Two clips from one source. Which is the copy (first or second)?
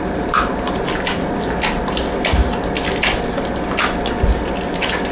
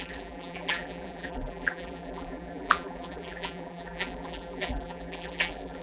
second